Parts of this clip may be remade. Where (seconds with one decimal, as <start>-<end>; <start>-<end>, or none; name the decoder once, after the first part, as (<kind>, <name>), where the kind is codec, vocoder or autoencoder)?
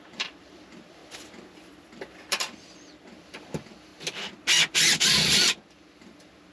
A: 0.0-1.0 (vocoder, BigVGAN v2); 2.3-3.9; 4.7-6.5